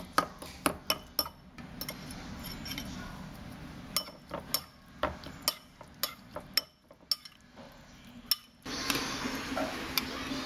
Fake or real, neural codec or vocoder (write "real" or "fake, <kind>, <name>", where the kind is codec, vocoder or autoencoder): real